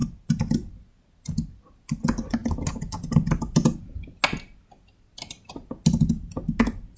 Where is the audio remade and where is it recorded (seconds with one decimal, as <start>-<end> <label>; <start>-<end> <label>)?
0.0-7.0 recorded